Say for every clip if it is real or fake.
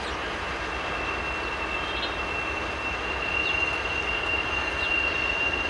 real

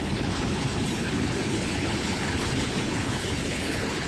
fake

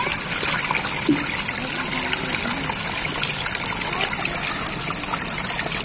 real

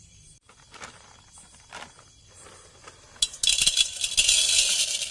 real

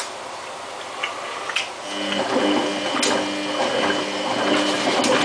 real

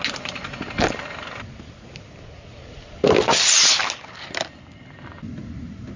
real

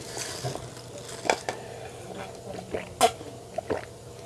real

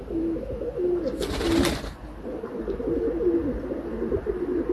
real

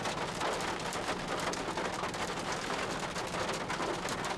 real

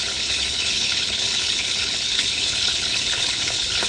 fake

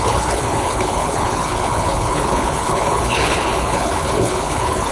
fake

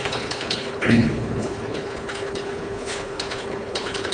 fake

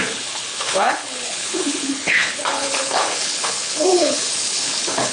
fake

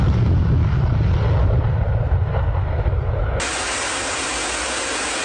real